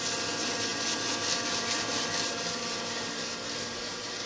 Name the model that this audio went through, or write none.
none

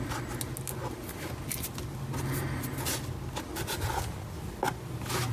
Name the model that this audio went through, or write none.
none